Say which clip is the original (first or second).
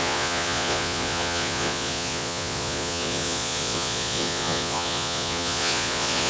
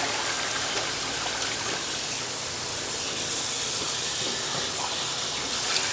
second